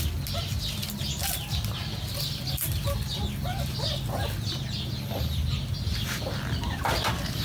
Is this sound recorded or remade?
recorded